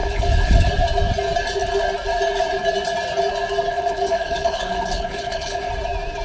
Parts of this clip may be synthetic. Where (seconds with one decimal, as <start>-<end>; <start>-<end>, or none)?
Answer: 0.0-0.7; 3.7-5.7